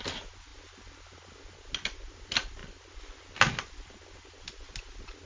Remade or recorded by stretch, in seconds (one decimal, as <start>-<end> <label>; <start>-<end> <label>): 0.0-5.3 recorded